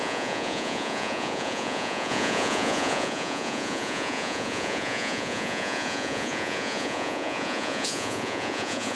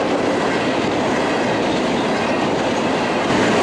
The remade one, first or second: first